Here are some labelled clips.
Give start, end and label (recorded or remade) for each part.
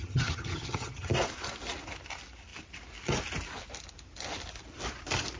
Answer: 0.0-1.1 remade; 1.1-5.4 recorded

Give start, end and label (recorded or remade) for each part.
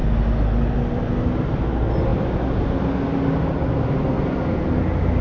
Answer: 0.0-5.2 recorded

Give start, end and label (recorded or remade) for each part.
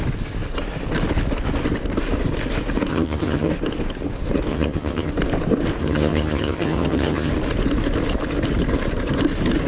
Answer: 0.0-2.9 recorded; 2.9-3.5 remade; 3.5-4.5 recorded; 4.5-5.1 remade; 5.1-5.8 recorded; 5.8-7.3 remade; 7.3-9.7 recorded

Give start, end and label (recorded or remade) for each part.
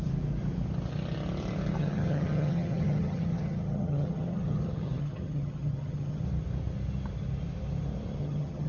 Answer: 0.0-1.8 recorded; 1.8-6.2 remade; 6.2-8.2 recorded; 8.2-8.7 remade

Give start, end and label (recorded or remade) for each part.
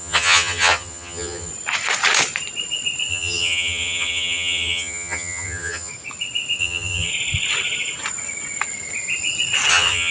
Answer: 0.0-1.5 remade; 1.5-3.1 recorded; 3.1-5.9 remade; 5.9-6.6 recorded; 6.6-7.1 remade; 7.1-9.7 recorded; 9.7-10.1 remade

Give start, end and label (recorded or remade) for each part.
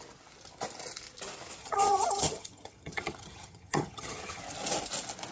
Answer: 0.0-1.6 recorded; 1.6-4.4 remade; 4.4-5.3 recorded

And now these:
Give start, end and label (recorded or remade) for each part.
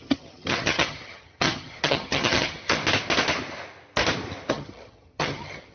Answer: 0.0-2.8 remade; 2.8-4.5 recorded; 4.5-5.7 remade